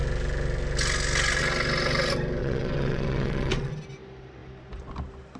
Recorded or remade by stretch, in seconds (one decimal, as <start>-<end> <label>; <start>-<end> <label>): 0.0-2.4 recorded; 2.4-3.7 remade; 3.7-5.4 recorded